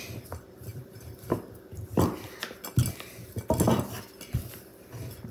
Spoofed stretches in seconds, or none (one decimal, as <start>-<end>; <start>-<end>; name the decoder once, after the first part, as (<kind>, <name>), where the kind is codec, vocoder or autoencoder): none